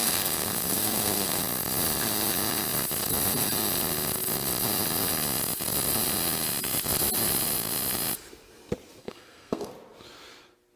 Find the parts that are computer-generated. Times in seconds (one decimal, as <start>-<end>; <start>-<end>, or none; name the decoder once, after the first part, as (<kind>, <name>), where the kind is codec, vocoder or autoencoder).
0.0-1.4 (codec, SNAC); 9.0-9.7